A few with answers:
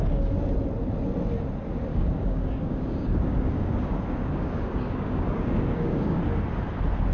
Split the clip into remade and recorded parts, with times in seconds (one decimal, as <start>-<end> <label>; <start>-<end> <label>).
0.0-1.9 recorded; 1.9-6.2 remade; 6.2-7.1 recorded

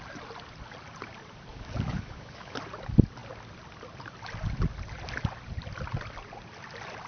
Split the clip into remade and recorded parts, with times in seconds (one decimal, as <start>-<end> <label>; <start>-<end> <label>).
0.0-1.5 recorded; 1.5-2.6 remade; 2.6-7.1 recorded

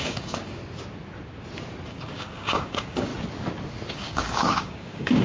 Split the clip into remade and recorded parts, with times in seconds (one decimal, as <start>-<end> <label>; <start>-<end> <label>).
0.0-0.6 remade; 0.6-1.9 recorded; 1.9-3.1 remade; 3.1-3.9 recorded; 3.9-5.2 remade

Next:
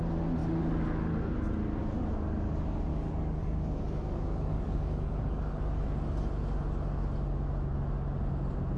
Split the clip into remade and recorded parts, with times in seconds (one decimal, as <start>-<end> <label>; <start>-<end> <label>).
0.0-2.9 recorded; 2.9-5.6 remade; 5.6-8.8 recorded

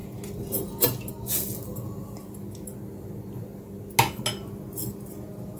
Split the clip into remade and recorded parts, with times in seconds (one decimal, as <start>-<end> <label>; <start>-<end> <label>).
0.0-5.6 recorded